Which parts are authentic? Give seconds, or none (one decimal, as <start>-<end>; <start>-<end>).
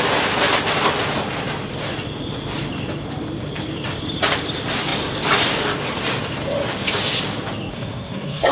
0.0-7.7